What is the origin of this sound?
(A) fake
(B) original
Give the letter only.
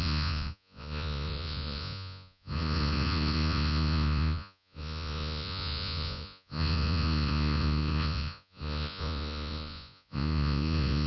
A